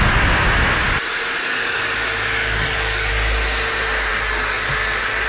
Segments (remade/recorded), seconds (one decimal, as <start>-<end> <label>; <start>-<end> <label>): 0.0-1.4 recorded; 1.4-3.1 remade; 3.1-4.1 recorded; 4.1-5.3 remade